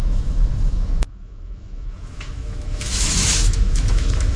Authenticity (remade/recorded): remade